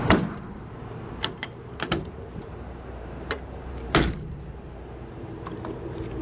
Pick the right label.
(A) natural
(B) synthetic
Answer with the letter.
B